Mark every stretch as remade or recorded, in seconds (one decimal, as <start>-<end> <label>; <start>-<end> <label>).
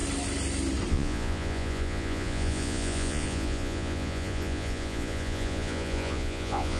0.0-0.9 recorded; 0.9-6.8 remade